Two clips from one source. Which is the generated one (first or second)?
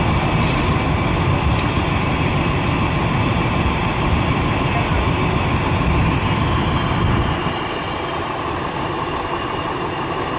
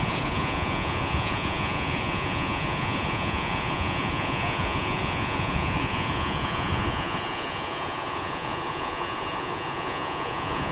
second